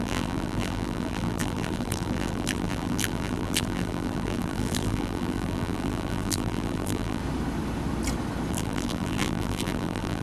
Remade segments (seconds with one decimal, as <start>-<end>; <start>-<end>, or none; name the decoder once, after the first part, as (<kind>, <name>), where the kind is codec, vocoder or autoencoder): 0.0-7.2 (vocoder, BigVGAN v2); 8.5-10.2